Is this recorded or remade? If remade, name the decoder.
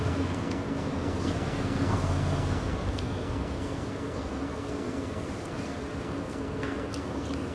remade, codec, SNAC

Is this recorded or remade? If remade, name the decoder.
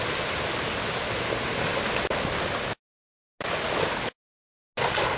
recorded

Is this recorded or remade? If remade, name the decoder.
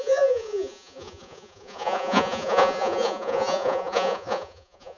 remade, vocoder, Vocos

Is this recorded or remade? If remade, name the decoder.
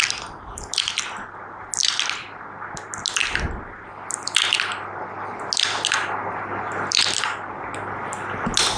recorded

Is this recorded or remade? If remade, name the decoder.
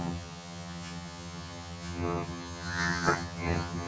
remade, vocoder, HiFi-GAN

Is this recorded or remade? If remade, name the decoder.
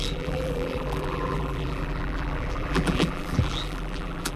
remade, vocoder, BigVGAN v2